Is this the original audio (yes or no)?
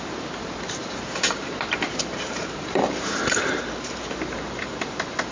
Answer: no